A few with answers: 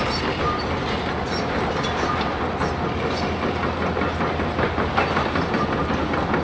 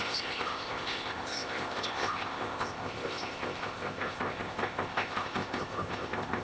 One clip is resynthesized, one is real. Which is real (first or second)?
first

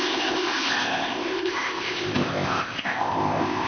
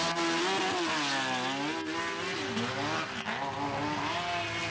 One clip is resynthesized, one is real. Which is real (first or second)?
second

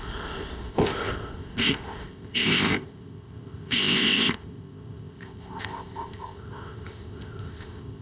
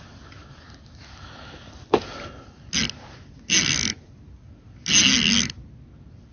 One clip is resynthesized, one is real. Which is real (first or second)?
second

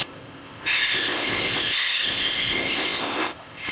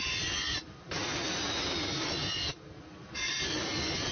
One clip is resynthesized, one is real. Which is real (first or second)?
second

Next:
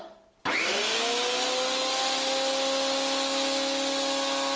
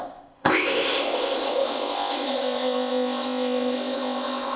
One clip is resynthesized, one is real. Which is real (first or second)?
first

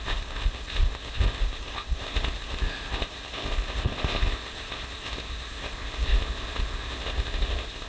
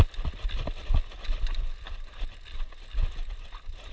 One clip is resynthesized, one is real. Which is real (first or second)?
second